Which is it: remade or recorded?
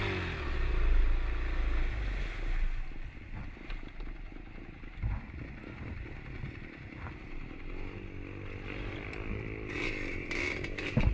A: recorded